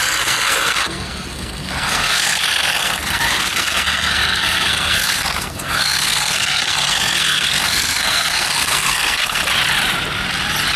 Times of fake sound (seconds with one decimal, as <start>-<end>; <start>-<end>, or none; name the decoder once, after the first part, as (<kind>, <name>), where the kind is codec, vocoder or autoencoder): 0.0-9.4 (codec, SNAC)